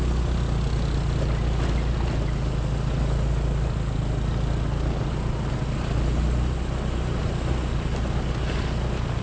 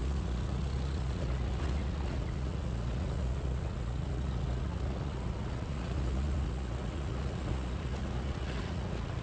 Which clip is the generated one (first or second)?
second